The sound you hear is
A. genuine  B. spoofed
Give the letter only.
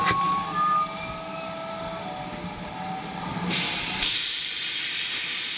A